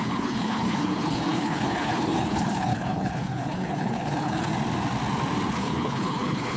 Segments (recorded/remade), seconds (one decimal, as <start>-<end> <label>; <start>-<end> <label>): 0.0-4.5 remade; 4.5-5.5 recorded; 5.5-6.6 remade